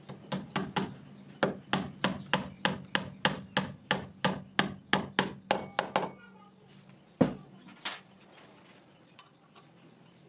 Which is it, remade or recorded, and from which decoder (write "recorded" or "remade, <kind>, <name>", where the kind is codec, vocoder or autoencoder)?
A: recorded